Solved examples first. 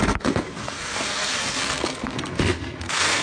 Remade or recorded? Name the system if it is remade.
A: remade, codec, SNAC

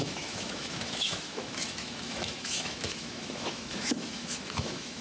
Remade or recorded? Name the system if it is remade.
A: remade, autoencoder, DAC-VAE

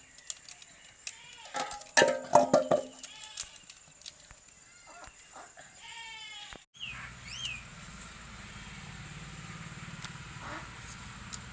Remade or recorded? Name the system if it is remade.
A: recorded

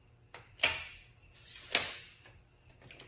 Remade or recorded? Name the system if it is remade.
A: recorded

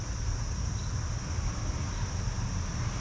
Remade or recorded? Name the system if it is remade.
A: recorded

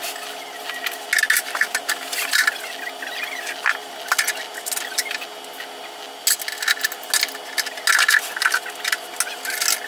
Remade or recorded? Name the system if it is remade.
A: recorded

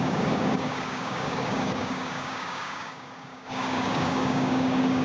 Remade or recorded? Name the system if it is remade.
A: remade, codec, DAC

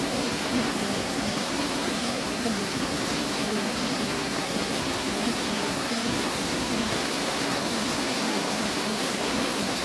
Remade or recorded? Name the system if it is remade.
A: remade, codec, SNAC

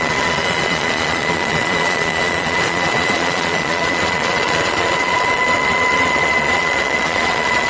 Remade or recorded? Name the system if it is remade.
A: remade, vocoder, Vocos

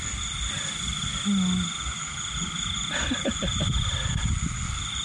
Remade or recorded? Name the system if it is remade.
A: recorded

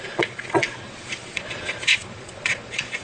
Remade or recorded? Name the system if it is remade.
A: remade, vocoder, Vocos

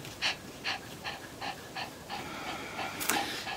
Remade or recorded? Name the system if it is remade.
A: recorded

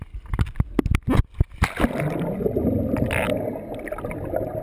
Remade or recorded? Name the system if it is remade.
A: recorded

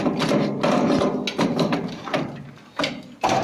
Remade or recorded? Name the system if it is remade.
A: recorded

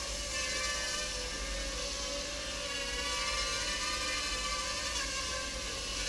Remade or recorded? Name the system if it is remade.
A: recorded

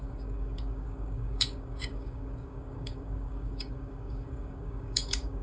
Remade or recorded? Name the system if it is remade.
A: remade, codec, DAC